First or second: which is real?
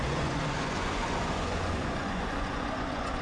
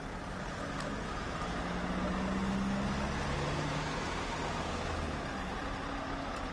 second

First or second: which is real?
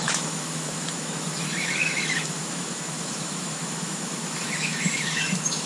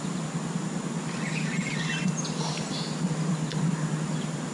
second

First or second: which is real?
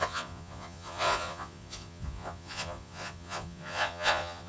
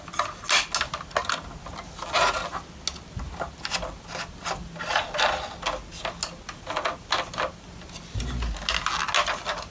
second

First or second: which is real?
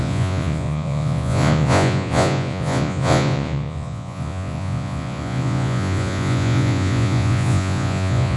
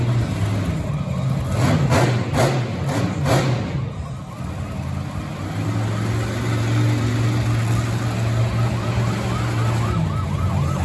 second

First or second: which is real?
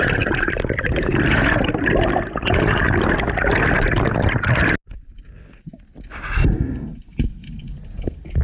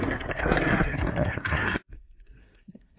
first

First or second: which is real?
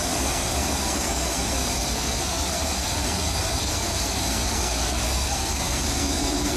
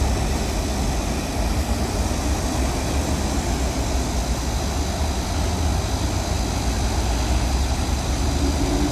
second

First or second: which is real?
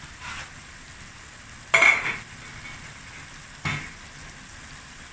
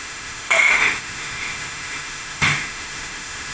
first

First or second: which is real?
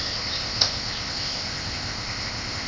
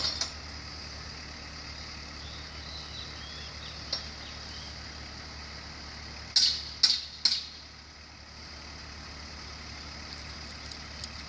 second